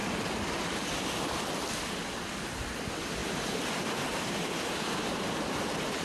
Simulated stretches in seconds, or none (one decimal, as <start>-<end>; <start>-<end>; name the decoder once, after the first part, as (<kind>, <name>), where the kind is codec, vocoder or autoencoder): 3.2-5.3 (vocoder, BigVGAN v2)